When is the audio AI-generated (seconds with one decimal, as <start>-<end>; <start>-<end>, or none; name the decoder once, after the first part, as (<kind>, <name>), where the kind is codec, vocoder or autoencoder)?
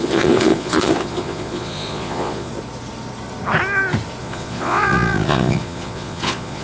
0.0-2.5 (vocoder, Vocos); 4.2-6.6